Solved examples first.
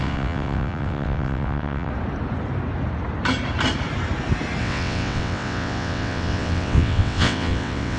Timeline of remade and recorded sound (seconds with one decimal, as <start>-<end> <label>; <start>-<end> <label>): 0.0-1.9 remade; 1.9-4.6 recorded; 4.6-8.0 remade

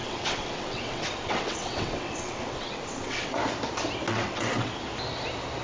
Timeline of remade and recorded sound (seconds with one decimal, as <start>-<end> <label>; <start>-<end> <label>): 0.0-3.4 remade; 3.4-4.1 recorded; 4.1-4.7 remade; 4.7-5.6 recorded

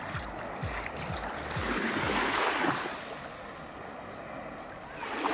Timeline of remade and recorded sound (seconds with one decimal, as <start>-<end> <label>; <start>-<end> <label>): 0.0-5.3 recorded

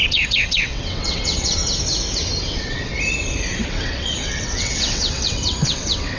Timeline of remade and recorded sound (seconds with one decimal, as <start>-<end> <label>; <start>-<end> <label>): 0.0-1.6 remade; 1.6-2.4 recorded; 2.4-2.9 remade; 2.9-3.5 recorded; 3.5-6.2 remade

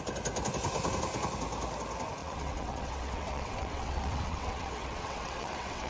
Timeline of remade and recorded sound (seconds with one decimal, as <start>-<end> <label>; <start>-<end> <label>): 0.0-2.2 recorded; 2.2-5.9 remade

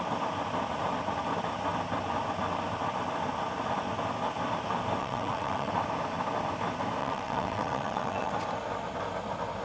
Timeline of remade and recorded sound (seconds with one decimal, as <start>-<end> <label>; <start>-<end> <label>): 0.0-5.0 recorded; 5.0-5.7 remade; 5.7-7.0 recorded; 7.0-8.3 remade; 8.3-9.6 recorded

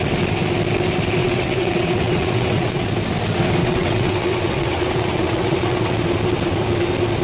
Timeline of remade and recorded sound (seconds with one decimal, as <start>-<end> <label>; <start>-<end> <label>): 0.0-1.2 recorded; 1.2-2.9 remade; 2.9-3.6 recorded; 3.6-6.0 remade; 6.0-7.2 recorded